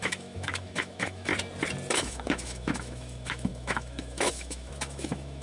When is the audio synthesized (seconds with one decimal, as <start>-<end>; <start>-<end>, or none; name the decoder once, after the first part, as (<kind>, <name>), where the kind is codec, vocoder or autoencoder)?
0.0-1.3 (autoencoder, DAC-VAE); 1.9-5.4